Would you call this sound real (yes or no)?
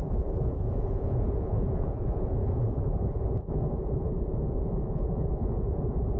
no